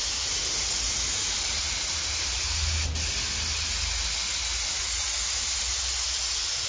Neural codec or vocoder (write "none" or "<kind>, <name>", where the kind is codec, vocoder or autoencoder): none